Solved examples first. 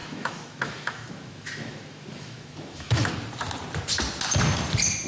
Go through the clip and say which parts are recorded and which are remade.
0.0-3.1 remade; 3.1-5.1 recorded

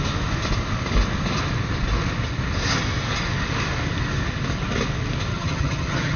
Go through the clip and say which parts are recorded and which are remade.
0.0-5.3 recorded; 5.3-6.2 remade

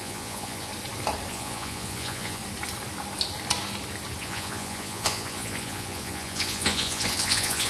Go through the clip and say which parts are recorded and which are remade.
0.0-0.7 remade; 0.7-1.3 recorded; 1.3-2.4 remade; 2.4-4.2 recorded; 4.2-7.7 remade

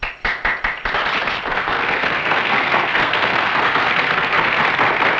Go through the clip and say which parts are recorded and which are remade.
0.0-1.5 recorded; 1.5-4.6 remade; 4.6-5.2 recorded

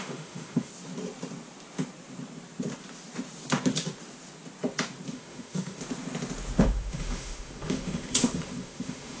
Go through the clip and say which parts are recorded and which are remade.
0.0-0.7 remade; 0.7-5.1 recorded; 5.1-5.8 remade; 5.8-6.6 recorded; 6.6-9.2 remade